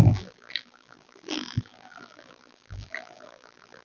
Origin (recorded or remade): remade